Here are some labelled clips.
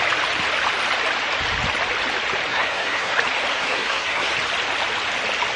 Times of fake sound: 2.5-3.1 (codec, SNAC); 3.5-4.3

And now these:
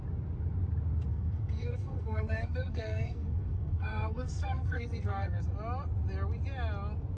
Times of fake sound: 1.1-5.4 (codec, SNAC)